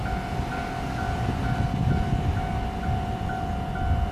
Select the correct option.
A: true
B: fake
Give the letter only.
A